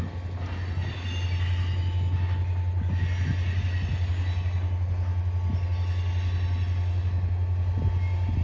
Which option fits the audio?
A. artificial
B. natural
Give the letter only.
B